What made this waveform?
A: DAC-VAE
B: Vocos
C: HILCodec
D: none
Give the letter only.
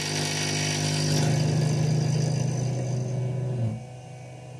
D